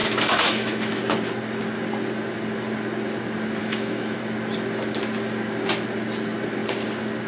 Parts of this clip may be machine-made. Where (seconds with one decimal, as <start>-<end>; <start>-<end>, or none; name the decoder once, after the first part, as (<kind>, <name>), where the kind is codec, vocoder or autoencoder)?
0.0-1.0 (autoencoder, DAC-VAE); 3.6-4.2